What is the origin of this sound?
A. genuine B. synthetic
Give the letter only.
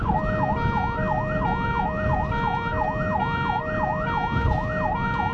A